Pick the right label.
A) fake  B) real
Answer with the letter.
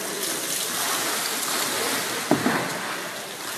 B